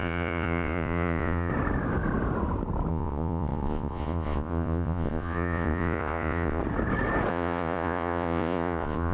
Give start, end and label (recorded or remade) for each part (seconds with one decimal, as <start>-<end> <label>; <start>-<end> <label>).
0.0-1.5 remade; 1.5-2.9 recorded; 2.9-6.6 remade; 6.6-7.3 recorded; 7.3-9.1 remade